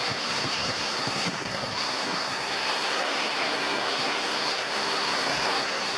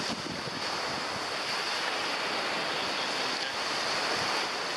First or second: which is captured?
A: second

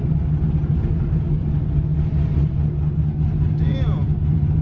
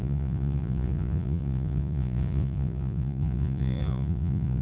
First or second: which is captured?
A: first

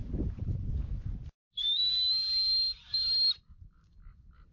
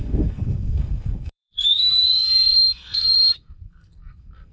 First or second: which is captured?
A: first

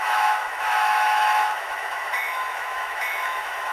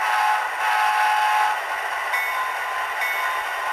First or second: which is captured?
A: second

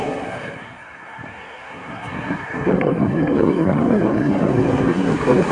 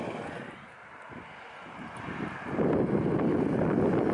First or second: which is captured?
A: second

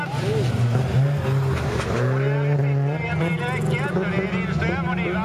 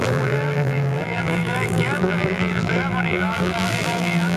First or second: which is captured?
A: first